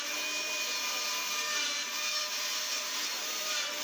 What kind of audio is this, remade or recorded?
recorded